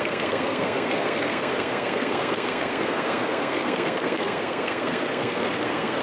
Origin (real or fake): fake